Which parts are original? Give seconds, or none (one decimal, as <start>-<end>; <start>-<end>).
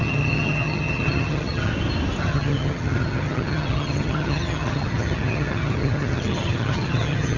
1.7-2.2